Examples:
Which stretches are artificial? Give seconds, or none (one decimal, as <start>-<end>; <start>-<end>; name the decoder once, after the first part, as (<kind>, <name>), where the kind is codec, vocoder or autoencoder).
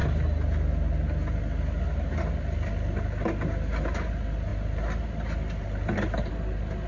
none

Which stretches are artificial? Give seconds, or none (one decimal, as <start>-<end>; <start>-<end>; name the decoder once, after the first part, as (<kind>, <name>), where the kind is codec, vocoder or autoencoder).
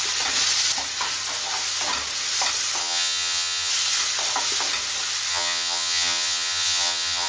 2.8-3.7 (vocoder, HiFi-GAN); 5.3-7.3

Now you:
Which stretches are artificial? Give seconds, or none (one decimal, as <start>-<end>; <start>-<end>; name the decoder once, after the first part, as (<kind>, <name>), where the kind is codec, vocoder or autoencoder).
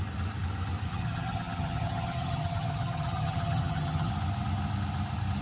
0.9-4.1 (vocoder, HiFi-GAN)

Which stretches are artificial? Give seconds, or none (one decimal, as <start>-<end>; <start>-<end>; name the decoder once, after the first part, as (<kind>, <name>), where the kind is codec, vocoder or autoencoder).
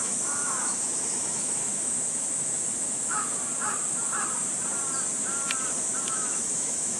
0.0-3.5 (autoencoder, DAC-VAE); 6.0-7.0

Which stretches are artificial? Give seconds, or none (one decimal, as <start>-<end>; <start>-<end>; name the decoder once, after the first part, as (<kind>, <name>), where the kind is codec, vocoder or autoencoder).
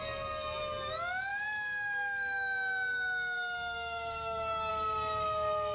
1.3-4.7 (codec, DAC)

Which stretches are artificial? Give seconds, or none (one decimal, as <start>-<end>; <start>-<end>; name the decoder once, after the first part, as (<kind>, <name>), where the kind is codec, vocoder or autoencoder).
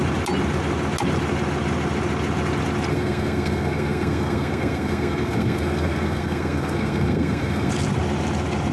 2.9-7.7 (codec, SNAC)